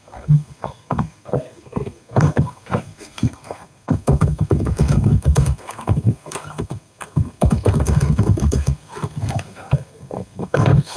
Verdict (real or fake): fake